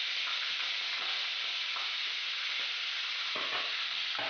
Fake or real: real